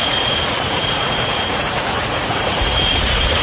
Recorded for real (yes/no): no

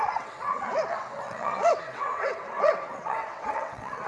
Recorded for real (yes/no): no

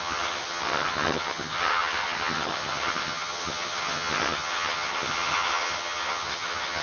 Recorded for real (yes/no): no